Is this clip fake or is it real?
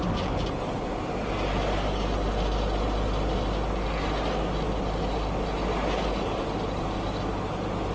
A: real